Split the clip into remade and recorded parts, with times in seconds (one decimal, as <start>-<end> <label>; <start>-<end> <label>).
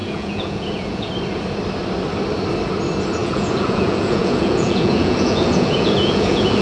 0.0-1.1 remade; 1.1-3.2 recorded; 3.2-6.6 remade